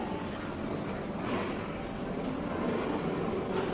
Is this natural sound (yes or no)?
yes